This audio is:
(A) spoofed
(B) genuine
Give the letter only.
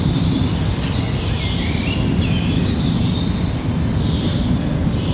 B